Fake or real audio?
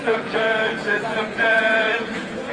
fake